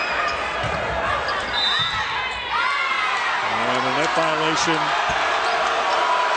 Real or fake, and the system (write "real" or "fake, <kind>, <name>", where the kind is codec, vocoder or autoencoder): real